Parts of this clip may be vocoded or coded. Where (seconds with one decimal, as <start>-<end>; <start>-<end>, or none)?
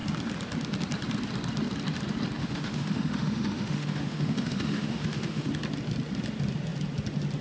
2.4-5.5